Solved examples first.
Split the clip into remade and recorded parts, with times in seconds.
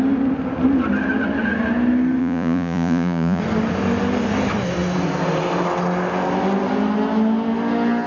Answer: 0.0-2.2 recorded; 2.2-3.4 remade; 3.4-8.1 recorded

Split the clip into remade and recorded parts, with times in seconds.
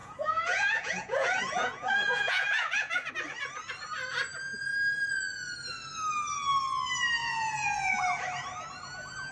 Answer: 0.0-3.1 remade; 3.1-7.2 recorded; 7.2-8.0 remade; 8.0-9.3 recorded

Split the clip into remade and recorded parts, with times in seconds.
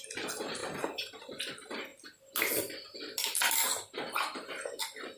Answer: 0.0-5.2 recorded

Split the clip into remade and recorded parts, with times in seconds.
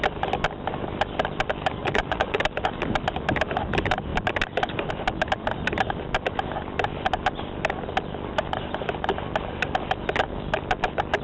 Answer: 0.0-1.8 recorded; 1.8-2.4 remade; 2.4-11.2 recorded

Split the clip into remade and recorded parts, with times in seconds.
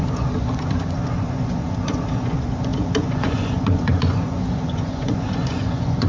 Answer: 0.0-6.1 remade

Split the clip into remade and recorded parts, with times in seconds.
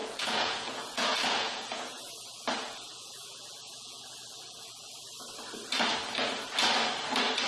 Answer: 0.0-2.1 remade; 2.1-2.6 recorded; 2.6-4.8 remade; 4.8-7.5 recorded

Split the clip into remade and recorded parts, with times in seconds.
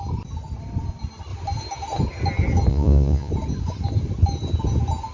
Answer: 0.0-2.7 recorded; 2.7-3.3 remade; 3.3-5.1 recorded